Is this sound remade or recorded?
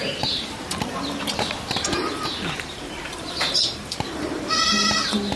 remade